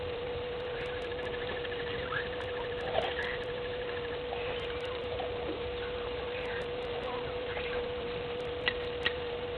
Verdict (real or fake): fake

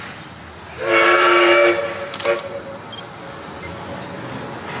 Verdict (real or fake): real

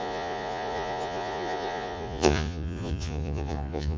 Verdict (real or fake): fake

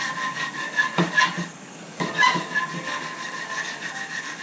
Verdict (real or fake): fake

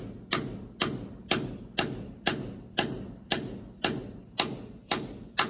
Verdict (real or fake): real